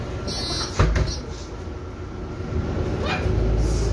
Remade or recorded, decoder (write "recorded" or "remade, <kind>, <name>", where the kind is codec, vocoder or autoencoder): recorded